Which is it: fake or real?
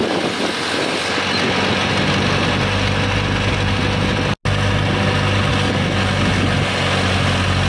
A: real